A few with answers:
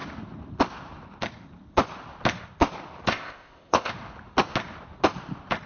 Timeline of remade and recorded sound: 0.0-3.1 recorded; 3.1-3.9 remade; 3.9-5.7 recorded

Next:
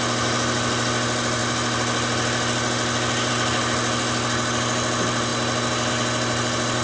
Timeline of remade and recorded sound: 0.0-6.8 recorded

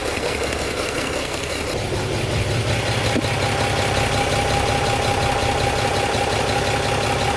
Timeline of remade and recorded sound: 0.0-1.6 remade; 1.6-7.4 recorded

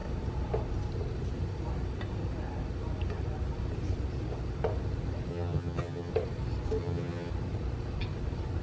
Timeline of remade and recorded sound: 0.0-5.3 recorded; 5.3-6.1 remade; 6.1-6.8 recorded; 6.8-7.3 remade; 7.3-8.6 recorded

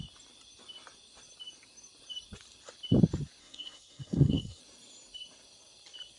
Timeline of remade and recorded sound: 0.0-3.4 recorded; 3.4-4.6 remade; 4.6-6.2 recorded